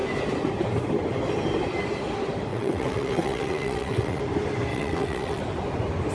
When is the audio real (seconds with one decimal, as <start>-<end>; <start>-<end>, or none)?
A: 0.0-2.5; 4.2-4.7; 5.4-6.1